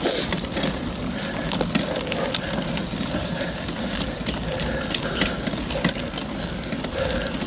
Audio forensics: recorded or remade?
recorded